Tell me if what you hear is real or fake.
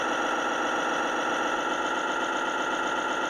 real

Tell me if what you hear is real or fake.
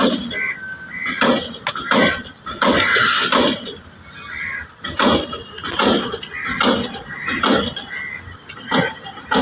real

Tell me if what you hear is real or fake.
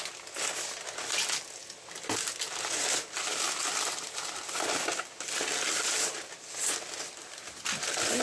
real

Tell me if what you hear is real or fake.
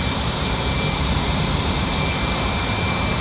fake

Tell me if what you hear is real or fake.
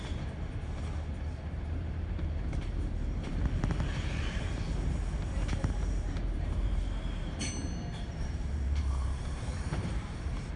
fake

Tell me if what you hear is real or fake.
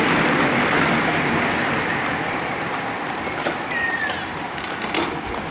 real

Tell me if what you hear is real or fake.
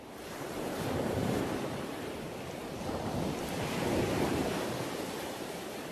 fake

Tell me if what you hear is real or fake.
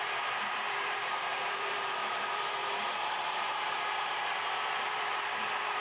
fake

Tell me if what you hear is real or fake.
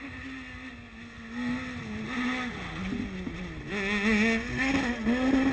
real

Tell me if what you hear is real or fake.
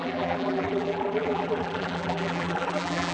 fake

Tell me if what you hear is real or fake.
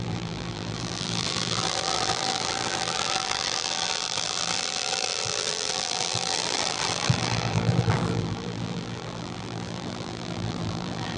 fake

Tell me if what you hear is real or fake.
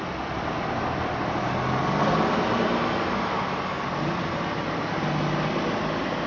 real